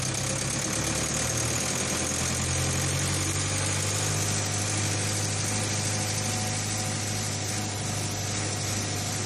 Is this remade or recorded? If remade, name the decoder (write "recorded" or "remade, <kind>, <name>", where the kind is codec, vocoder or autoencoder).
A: recorded